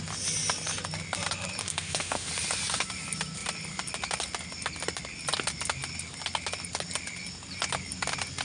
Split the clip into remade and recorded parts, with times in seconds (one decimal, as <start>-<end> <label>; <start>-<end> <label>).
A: 0.0-1.6 recorded; 1.6-2.3 remade; 2.3-8.4 recorded

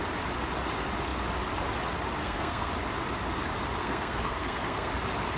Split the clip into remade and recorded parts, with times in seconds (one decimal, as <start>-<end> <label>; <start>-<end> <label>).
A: 0.0-2.2 recorded; 2.2-2.7 remade; 2.7-3.8 recorded; 3.8-4.9 remade; 4.9-5.4 recorded

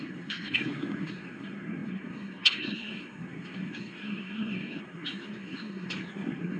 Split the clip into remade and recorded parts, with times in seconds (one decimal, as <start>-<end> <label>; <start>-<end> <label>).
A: 0.0-6.6 remade

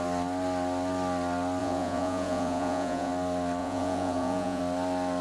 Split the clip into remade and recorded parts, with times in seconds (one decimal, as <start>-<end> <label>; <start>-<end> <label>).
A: 0.0-1.6 recorded; 1.6-3.1 remade; 3.1-3.6 recorded; 3.6-4.6 remade; 4.6-5.2 recorded

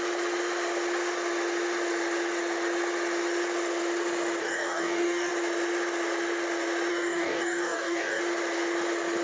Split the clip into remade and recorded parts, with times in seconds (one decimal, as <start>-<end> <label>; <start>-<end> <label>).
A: 0.0-4.4 recorded; 4.4-5.3 remade; 5.3-6.9 recorded; 6.9-8.2 remade; 8.2-9.2 recorded